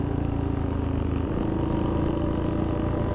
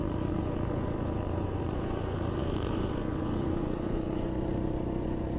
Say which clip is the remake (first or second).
second